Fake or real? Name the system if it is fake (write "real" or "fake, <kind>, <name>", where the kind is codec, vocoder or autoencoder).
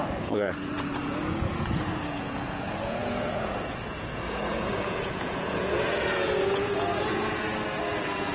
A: fake, vocoder, Vocos